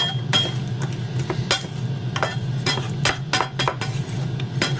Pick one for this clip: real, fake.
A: real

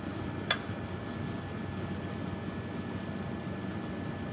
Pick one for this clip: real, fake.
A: real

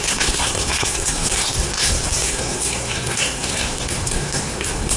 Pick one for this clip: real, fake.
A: fake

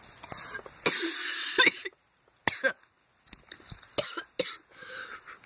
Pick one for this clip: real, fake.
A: real